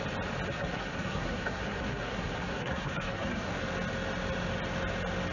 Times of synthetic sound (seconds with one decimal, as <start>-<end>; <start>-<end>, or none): 0.5-3.5